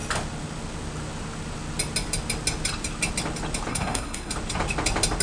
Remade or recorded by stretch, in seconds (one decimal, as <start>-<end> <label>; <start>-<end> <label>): 0.0-3.7 recorded; 3.7-4.3 remade; 4.3-5.2 recorded